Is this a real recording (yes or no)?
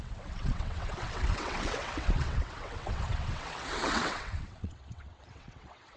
no